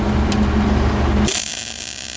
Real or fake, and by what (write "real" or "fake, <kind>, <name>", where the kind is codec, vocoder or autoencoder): real